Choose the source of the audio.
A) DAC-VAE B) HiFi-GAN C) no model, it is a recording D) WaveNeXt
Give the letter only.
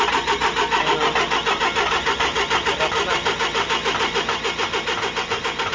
C